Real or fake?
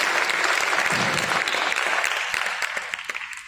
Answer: real